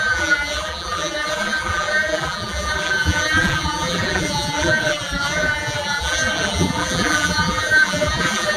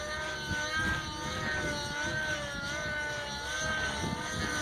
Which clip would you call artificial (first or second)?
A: first